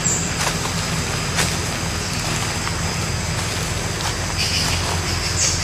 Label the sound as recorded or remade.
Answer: recorded